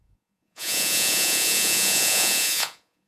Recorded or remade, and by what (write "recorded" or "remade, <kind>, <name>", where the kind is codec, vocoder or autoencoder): remade, vocoder, Vocos